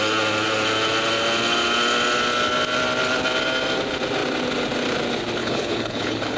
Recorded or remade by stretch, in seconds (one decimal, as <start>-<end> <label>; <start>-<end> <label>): 0.0-5.4 recorded; 5.4-6.4 remade